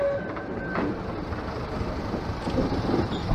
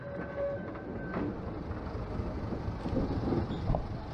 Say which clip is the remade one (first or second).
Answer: first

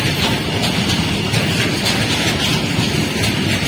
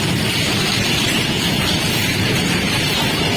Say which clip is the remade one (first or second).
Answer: second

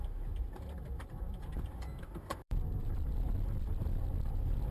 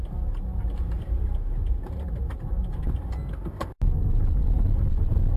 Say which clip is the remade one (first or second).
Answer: first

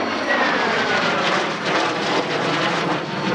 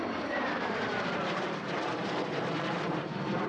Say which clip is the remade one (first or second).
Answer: second